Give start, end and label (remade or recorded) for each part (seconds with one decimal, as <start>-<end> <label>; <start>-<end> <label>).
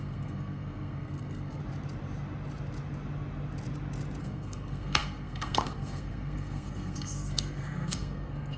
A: 0.0-1.6 remade; 1.6-4.2 recorded; 4.2-8.6 remade